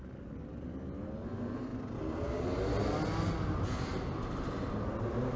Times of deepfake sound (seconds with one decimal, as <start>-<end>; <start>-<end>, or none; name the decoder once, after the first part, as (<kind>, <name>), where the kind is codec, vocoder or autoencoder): none